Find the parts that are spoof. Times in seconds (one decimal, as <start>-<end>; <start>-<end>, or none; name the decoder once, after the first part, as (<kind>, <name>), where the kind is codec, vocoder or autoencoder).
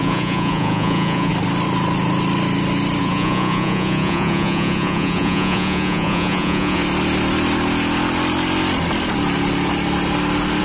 0.0-1.3 (vocoder, Vocos); 3.0-6.8